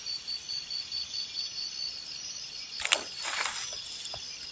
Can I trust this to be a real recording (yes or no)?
yes